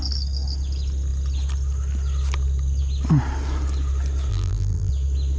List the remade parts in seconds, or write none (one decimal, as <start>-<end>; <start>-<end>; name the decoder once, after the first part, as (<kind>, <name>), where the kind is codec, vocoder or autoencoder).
4.3-4.9 (vocoder, BigVGAN v2)